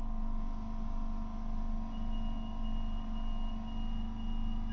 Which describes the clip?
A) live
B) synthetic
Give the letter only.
A